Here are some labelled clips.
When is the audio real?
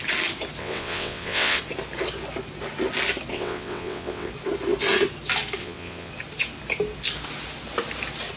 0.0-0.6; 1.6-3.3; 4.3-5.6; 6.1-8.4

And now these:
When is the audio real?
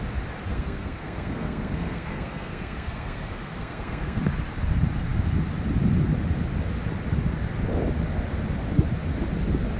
0.0-0.5; 4.2-9.8